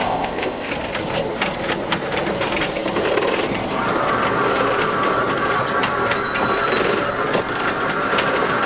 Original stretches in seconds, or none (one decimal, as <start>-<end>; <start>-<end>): 0.7-8.7